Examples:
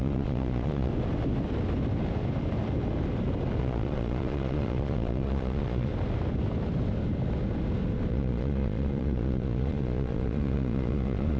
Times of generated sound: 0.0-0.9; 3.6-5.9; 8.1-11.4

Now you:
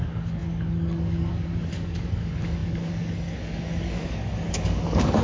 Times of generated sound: 0.0-5.2

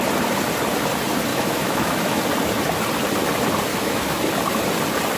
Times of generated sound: 1.3-2.2; 3.7-4.3